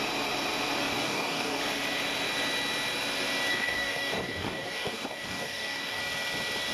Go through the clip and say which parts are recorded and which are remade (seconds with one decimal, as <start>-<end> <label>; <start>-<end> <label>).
0.0-0.8 recorded; 0.8-1.6 remade; 1.6-3.5 recorded; 3.5-6.0 remade; 6.0-6.7 recorded